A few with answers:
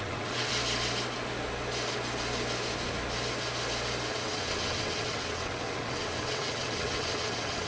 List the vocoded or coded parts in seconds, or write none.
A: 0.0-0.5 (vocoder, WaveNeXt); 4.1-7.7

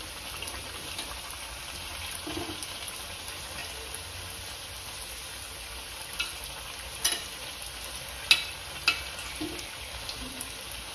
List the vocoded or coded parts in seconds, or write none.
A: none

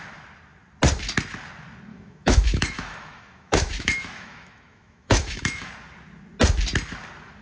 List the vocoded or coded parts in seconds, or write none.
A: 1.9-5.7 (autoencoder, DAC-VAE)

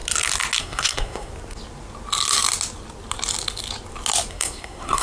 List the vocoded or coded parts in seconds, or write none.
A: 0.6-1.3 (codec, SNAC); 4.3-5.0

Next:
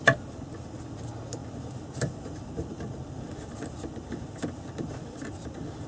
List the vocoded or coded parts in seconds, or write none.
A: 1.4-4.9 (vocoder, BigVGAN v2)

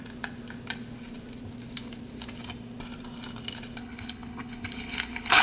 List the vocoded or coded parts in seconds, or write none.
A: 3.8-5.4 (codec, HILCodec)

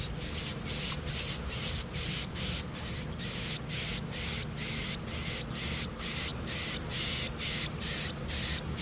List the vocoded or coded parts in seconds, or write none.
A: 0.5-2.3 (vocoder, BigVGAN v2)

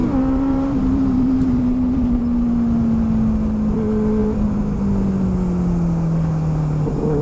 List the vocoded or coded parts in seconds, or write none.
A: 0.0-2.2 (vocoder, BigVGAN v2); 4.2-4.8